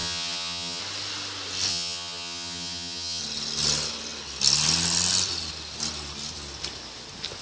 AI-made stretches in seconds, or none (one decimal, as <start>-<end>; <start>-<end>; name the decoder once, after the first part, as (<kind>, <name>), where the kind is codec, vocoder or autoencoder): 0.0-0.8 (vocoder, HiFi-GAN); 1.7-3.2